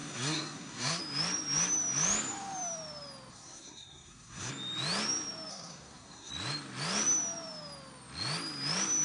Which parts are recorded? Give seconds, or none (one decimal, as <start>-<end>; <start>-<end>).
1.0-3.3; 4.5-5.5; 6.3-9.0